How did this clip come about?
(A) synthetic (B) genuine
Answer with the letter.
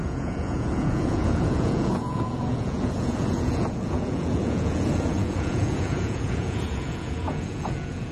A